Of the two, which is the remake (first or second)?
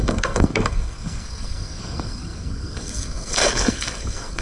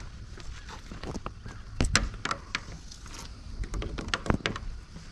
first